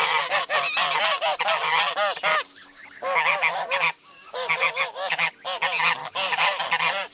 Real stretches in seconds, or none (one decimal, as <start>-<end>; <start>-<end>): 0.0-2.3; 5.3-6.0; 6.6-7.1